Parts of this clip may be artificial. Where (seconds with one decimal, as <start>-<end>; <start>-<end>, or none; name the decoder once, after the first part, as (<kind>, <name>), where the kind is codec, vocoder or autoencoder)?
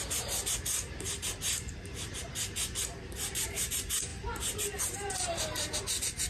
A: 0.0-6.3 (vocoder, BigVGAN v2)